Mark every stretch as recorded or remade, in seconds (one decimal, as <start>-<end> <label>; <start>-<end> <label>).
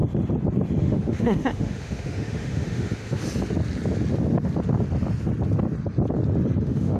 0.0-0.8 recorded; 0.8-3.2 remade; 3.2-6.6 recorded; 6.6-7.0 remade